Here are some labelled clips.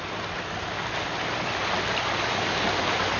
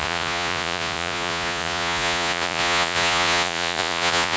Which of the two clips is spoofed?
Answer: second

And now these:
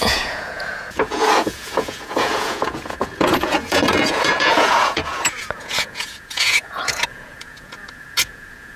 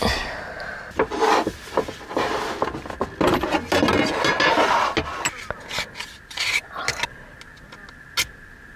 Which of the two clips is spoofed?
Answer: first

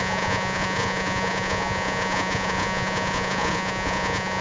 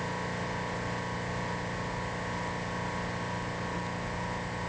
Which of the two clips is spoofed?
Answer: first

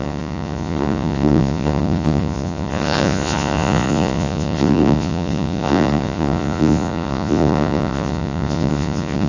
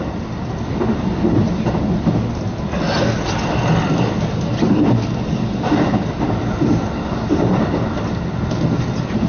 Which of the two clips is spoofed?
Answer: first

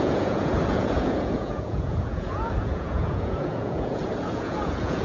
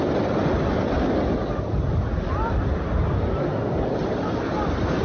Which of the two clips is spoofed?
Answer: first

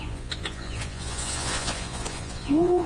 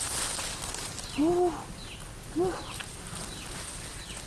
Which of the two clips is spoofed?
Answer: first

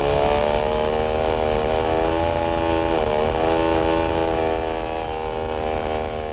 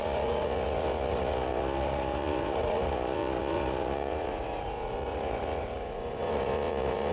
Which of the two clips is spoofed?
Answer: second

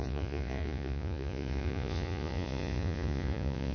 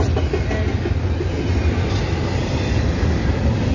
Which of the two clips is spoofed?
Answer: first